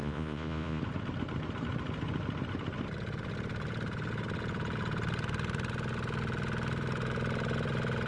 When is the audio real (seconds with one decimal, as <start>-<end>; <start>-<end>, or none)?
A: 0.8-8.1